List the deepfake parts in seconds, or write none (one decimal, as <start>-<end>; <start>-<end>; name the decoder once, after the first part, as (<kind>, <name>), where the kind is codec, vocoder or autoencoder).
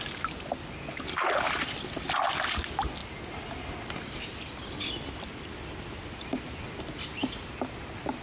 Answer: none